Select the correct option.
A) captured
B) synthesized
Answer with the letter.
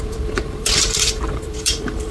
B